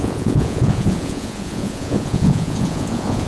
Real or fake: fake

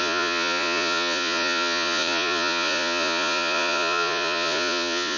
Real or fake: fake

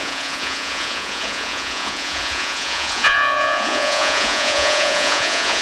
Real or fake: fake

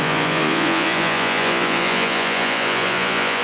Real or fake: fake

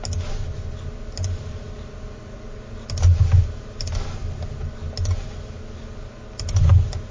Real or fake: real